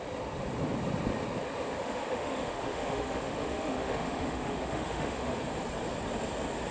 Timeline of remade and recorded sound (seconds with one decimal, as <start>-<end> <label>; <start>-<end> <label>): 0.0-1.8 recorded; 1.8-5.3 remade; 5.3-6.7 recorded